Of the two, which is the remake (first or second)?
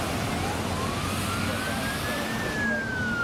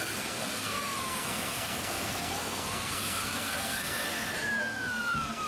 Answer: second